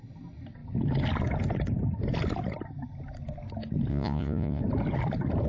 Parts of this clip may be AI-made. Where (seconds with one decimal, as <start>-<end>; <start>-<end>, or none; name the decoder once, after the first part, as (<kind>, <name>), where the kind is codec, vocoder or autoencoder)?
3.9-4.6 (vocoder, Vocos)